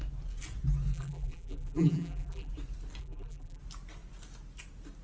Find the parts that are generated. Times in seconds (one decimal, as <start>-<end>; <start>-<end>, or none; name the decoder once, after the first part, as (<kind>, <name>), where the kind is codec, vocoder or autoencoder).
0.9-2.5 (vocoder, BigVGAN v2); 3.0-3.6